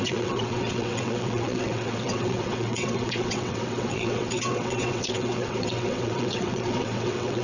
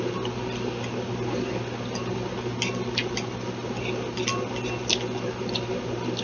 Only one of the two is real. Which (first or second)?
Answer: second